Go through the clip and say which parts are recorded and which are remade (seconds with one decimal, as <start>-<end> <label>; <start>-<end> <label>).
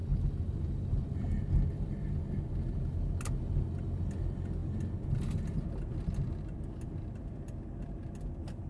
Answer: 0.0-8.7 recorded